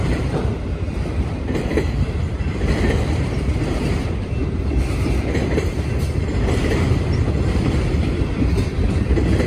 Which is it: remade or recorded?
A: remade